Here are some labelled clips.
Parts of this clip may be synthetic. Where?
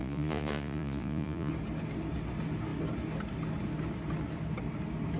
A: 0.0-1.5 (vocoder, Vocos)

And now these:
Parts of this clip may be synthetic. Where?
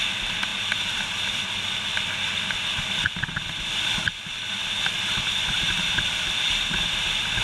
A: none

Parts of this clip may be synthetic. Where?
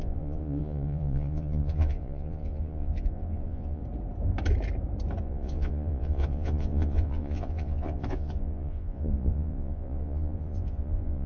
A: 0.0-3.8 (vocoder, Vocos); 5.2-11.3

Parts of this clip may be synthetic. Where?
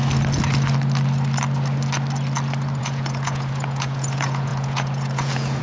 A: 2.8-5.6 (vocoder, Vocos)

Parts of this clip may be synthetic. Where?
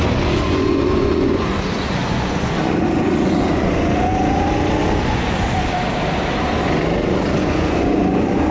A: 0.0-4.1 (vocoder, Vocos); 4.8-5.6; 7.4-8.5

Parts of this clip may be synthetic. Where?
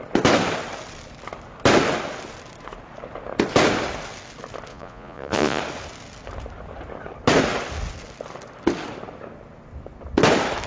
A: 4.7-5.6 (vocoder, Vocos)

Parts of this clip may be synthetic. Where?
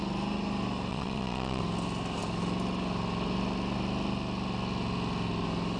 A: 0.9-1.6 (vocoder, Vocos)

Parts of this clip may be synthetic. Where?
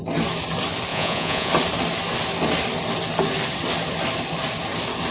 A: 0.9-1.5 (vocoder, Vocos)